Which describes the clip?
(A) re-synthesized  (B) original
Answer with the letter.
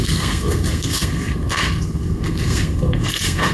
A